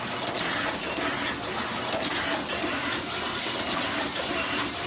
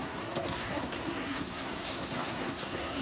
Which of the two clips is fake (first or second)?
second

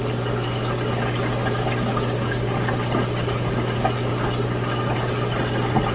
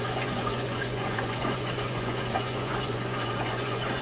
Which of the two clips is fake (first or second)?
second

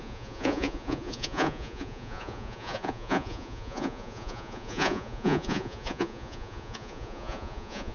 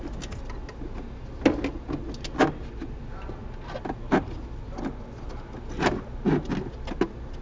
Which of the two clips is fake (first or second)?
first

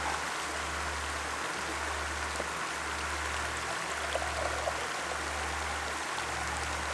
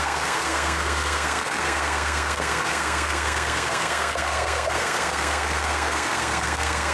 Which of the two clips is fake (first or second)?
second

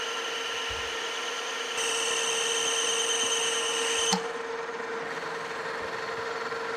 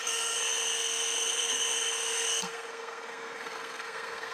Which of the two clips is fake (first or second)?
second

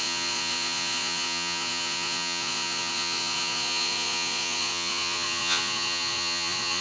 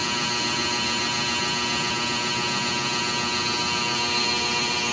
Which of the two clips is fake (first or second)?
first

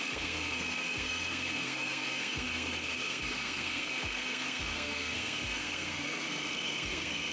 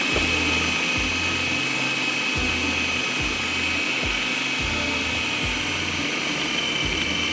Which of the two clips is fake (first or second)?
first